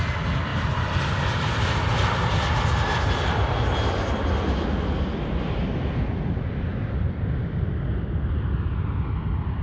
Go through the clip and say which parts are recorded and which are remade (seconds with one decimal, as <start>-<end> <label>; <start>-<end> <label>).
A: 0.0-9.6 recorded